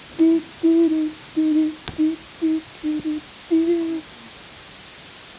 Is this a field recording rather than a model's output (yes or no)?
yes